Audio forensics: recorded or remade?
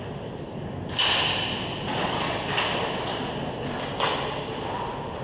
recorded